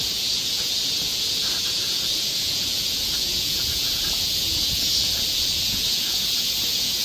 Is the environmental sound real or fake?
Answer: fake